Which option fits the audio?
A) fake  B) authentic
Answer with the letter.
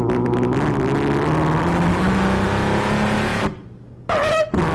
B